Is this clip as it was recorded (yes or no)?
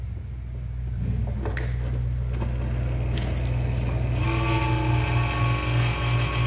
yes